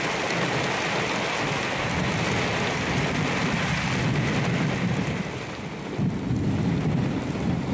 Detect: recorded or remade recorded